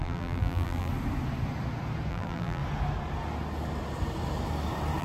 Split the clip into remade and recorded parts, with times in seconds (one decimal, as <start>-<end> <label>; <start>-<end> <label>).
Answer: 0.0-0.9 remade; 0.9-2.1 recorded; 2.1-2.6 remade; 2.6-5.0 recorded

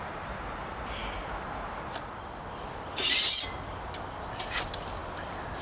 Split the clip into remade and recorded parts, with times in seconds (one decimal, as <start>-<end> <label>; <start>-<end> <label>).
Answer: 0.0-5.6 recorded

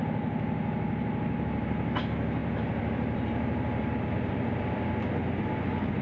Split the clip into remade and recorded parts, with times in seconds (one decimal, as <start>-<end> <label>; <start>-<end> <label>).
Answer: 0.0-2.4 recorded; 2.4-4.8 remade; 4.8-6.0 recorded

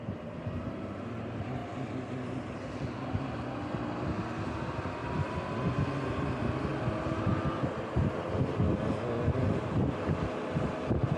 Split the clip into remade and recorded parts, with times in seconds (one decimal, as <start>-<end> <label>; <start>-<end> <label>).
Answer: 0.0-1.6 remade; 1.6-4.6 recorded; 4.6-5.0 remade; 5.0-6.1 recorded; 6.1-6.7 remade; 6.7-10.7 recorded; 10.7-11.2 remade

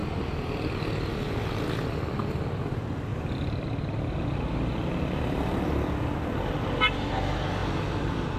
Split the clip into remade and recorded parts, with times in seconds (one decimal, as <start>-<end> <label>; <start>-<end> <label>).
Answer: 0.0-3.1 recorded; 3.1-7.1 remade; 7.1-7.6 recorded; 7.6-8.4 remade

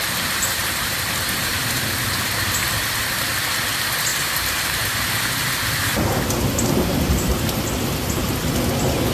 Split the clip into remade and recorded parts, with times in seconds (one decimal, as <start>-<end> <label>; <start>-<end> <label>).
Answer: 0.0-0.6 recorded; 0.6-1.6 remade; 1.6-4.1 recorded; 4.1-7.6 remade; 7.6-9.1 recorded

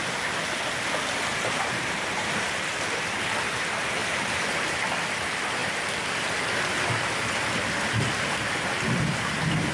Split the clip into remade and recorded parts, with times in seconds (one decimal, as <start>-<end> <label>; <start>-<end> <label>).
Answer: 0.0-1.3 recorded; 1.3-2.4 remade; 2.4-4.0 recorded; 4.0-4.8 remade; 4.8-9.7 recorded